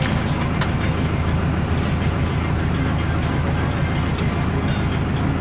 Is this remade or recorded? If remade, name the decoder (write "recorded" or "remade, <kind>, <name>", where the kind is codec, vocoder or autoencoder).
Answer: recorded